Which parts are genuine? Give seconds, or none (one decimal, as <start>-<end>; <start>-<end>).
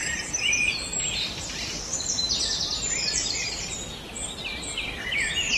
0.7-1.9; 5.0-5.6